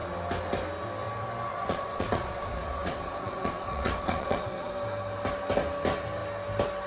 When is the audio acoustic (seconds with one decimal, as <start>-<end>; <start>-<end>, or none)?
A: 0.0-1.5; 4.7-6.9